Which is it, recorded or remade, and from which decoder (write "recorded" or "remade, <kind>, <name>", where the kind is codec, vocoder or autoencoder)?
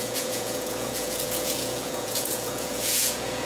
remade, vocoder, Vocos